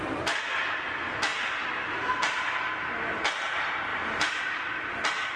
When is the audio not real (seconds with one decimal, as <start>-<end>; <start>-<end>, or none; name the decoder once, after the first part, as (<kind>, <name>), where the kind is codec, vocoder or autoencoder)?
1.3-2.7 (vocoder, BigVGAN v2); 3.9-4.4

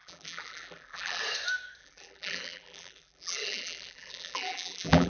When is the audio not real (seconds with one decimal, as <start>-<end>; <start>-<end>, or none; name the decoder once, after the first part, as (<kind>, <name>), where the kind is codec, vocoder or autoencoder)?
0.0-1.2 (vocoder, BigVGAN v2); 1.8-5.1

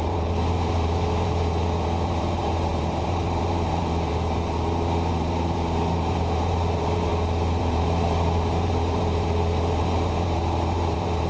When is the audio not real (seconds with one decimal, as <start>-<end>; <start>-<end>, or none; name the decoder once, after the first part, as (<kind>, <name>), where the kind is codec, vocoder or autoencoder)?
0.0-7.1 (vocoder, BigVGAN v2); 7.6-11.3

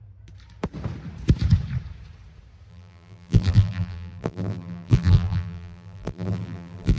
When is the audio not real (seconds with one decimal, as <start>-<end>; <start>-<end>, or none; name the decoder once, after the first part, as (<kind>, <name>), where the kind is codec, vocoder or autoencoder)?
2.7-7.0 (vocoder, BigVGAN v2)

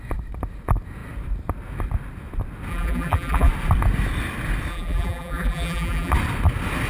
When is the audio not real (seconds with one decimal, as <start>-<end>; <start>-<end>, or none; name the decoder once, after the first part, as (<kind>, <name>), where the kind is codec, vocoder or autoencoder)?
2.7-3.5 (vocoder, BigVGAN v2); 4.7-6.1